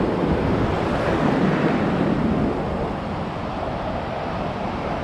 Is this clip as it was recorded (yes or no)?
yes